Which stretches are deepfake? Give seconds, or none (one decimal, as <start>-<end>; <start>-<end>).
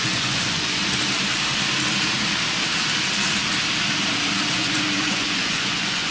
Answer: 0.0-0.8; 4.5-6.1